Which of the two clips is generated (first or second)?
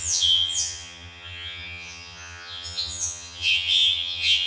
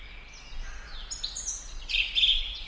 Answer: first